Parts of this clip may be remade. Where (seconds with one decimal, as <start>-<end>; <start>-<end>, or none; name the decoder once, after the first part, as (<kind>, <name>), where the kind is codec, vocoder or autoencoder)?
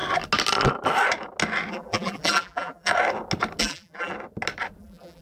1.7-2.9 (vocoder, BigVGAN v2); 3.6-4.1; 4.8-5.2